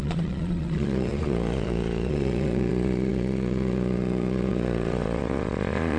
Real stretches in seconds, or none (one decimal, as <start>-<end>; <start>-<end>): none